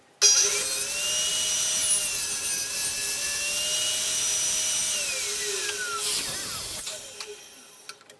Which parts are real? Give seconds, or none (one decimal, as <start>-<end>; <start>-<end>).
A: 0.0-8.2